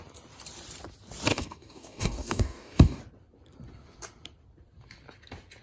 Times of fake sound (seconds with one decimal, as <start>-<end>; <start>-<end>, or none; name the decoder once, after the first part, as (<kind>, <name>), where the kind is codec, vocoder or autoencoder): 1.3-3.0 (codec, DAC)